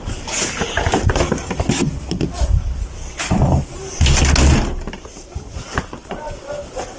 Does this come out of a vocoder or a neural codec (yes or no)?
no